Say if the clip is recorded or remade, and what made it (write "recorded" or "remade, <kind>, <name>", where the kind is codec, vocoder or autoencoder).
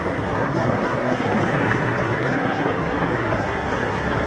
remade, codec, SNAC